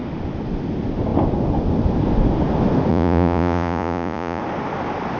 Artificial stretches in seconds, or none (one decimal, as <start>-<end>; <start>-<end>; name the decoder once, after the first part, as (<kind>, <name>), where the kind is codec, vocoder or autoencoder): 2.9-4.4 (vocoder, Vocos)